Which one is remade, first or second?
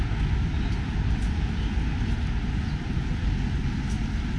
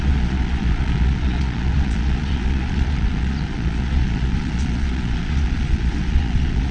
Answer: second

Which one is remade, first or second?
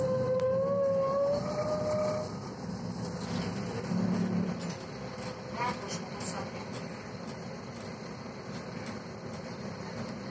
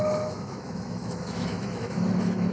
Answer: second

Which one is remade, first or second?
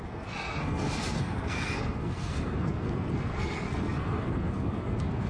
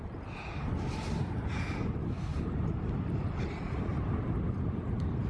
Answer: first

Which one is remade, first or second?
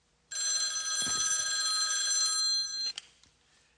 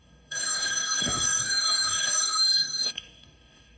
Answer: second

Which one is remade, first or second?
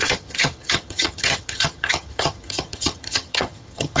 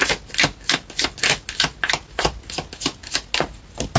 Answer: first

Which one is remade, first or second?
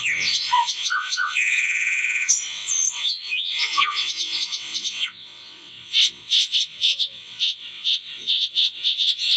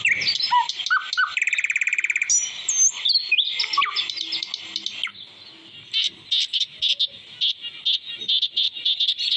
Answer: first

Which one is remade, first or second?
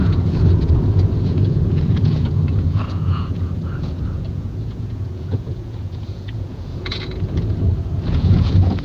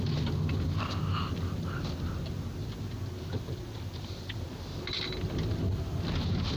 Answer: first